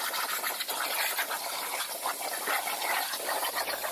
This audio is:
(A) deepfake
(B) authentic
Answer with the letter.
B